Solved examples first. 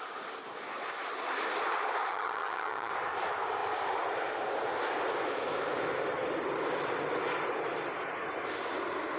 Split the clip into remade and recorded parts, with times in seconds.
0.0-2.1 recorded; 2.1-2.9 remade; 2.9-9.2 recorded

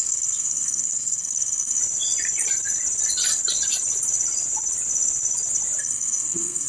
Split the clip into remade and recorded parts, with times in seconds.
0.0-1.8 remade; 1.8-5.8 recorded; 5.8-6.7 remade

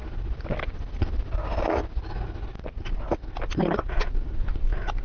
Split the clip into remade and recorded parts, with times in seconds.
0.0-5.0 recorded

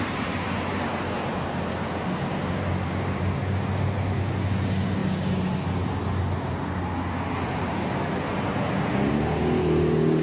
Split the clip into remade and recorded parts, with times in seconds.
0.0-10.2 recorded

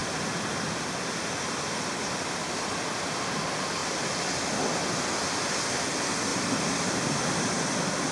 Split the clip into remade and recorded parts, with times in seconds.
0.0-2.7 remade; 2.7-6.3 recorded; 6.3-7.5 remade; 7.5-8.1 recorded

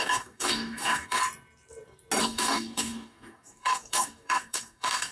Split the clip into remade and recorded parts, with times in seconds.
0.0-1.2 remade; 1.2-2.2 recorded; 2.2-5.1 remade